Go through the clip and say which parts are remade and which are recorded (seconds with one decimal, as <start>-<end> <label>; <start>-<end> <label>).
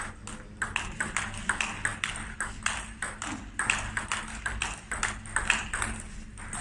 0.0-6.6 recorded